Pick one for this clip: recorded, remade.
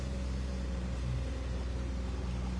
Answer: recorded